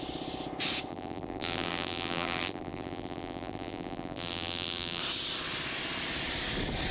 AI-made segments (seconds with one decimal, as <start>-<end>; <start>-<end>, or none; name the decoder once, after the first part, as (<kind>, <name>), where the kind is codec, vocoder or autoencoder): 0.9-5.0 (vocoder, BigVGAN v2)